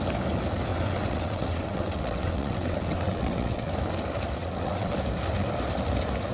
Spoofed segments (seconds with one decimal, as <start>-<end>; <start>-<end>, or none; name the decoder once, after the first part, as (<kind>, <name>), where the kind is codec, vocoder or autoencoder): 0.7-3.7 (vocoder, WaveNeXt); 4.4-4.9